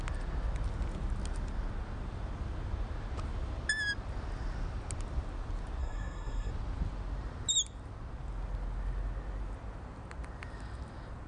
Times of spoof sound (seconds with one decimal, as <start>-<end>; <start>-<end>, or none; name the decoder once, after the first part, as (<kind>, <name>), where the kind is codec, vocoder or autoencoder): 5.8-6.5 (codec, SNAC)